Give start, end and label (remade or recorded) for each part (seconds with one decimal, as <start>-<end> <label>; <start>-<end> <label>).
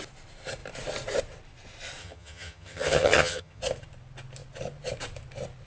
0.0-2.0 recorded; 2.0-3.6 remade; 3.6-5.7 recorded